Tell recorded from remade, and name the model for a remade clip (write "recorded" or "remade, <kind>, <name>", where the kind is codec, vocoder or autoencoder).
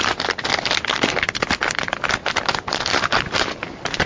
recorded